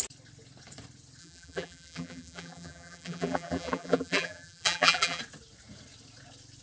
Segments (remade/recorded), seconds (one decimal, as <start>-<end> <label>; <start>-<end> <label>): 0.0-1.2 recorded; 1.2-5.2 remade; 5.2-6.6 recorded